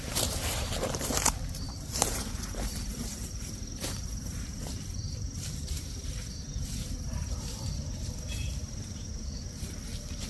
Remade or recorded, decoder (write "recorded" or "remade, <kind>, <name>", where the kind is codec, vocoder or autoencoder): remade, vocoder, BigVGAN v2